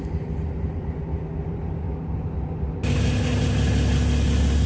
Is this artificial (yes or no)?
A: no